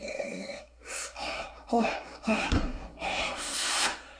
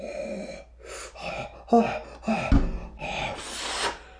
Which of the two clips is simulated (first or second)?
first